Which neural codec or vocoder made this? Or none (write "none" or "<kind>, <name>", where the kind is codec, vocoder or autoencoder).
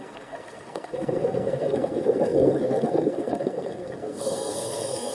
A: codec, SNAC